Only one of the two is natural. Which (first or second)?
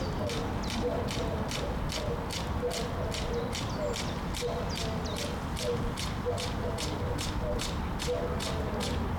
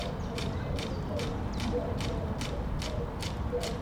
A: first